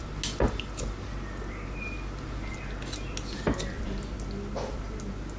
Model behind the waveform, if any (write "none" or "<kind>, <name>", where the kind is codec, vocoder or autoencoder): none